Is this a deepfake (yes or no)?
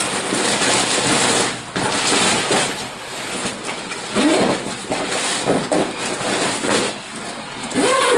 no